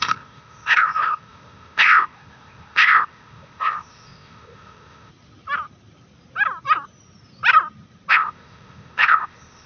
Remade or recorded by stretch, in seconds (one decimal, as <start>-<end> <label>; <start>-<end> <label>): 0.0-5.1 remade; 5.1-8.1 recorded; 8.1-9.7 remade